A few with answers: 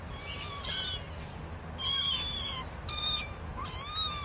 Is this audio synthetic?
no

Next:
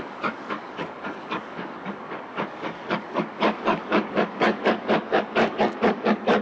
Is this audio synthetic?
yes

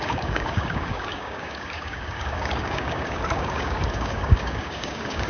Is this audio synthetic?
yes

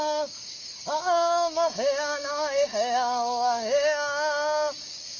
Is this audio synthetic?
yes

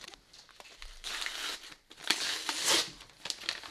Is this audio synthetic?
no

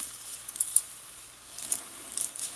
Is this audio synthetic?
yes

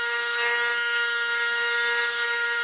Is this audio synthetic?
yes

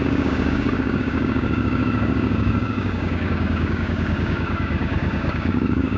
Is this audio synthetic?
yes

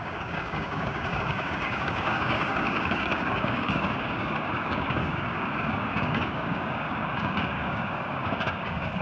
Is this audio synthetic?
yes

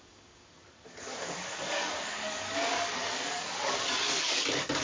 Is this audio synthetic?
yes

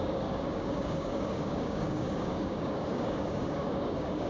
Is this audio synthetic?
yes